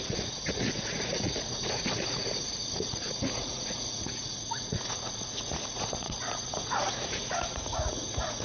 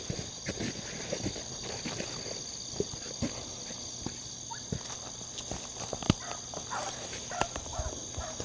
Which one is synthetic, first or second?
first